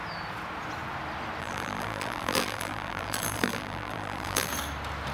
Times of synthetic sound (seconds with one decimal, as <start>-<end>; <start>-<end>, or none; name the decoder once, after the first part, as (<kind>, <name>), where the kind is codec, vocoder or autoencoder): 1.4-4.5 (vocoder, BigVGAN v2)